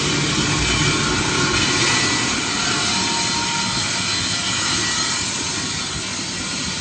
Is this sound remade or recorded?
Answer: recorded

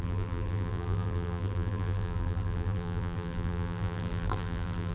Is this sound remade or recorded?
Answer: remade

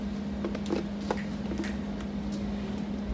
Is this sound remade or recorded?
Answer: recorded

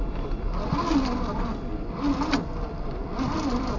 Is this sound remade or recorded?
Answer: recorded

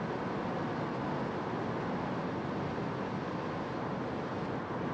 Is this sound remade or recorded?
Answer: recorded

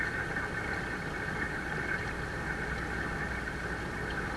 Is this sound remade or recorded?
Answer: recorded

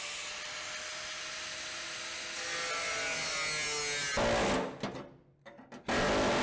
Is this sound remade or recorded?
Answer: recorded